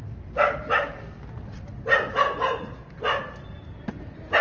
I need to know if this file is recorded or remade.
recorded